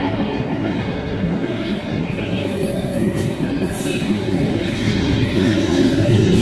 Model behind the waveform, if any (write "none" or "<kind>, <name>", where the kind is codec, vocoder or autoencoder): codec, SNAC